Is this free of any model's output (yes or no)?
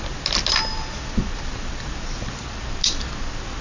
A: yes